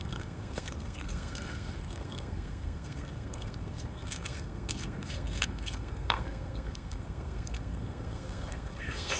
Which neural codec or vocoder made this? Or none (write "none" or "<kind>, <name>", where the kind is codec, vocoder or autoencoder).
codec, SNAC